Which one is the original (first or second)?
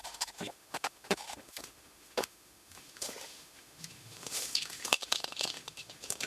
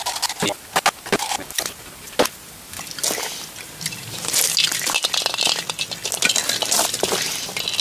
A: second